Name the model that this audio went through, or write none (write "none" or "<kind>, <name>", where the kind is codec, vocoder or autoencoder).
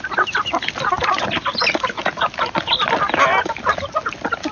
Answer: none